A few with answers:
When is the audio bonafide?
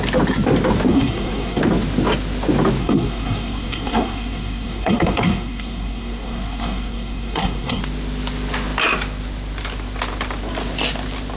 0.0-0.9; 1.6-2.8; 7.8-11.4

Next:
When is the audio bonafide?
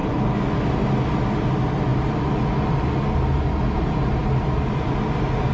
0.6-5.5